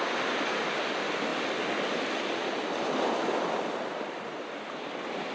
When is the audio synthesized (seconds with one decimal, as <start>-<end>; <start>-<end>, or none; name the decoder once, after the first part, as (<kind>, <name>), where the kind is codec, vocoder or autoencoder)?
none